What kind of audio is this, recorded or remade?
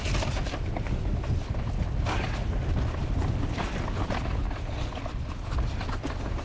recorded